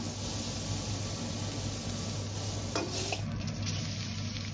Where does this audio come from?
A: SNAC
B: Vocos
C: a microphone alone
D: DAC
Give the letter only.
C